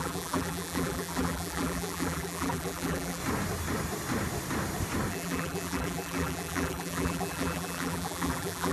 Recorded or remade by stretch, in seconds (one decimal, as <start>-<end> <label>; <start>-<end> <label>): 0.0-3.2 remade; 3.2-5.1 recorded; 5.1-8.7 remade